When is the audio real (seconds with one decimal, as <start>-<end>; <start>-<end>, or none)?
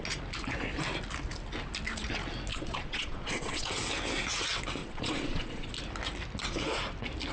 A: 0.0-2.5; 3.7-4.8; 5.7-7.3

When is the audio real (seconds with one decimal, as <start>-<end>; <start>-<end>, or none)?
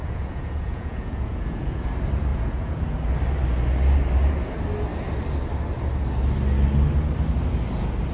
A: 1.9-2.3; 3.1-8.1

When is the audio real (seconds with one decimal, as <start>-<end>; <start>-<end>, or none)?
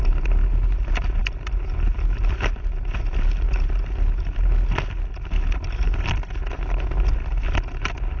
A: 0.0-8.2